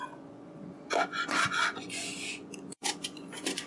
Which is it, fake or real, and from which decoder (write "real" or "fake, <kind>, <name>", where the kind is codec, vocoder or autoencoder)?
fake, vocoder, Vocos